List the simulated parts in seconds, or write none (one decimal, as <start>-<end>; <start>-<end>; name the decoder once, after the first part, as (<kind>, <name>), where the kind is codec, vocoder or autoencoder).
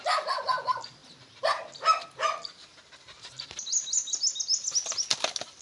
none